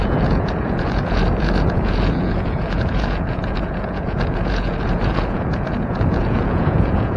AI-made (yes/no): yes